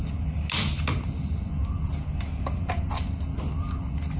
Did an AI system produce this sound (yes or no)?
no